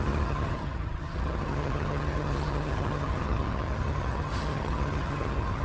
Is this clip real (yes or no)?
no